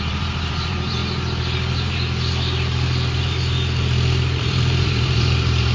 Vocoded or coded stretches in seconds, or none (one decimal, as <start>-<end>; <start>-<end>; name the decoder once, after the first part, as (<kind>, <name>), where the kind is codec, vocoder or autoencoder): 0.0-1.0 (vocoder, BigVGAN v2); 4.4-5.7